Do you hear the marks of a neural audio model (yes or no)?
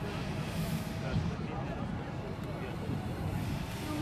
no